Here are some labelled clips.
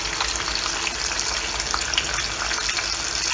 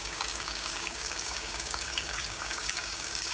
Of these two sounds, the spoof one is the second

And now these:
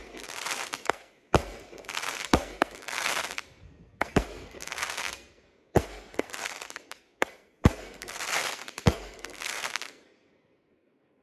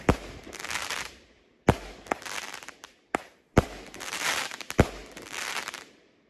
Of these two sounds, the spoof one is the first